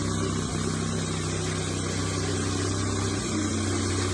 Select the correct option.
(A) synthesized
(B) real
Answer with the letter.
B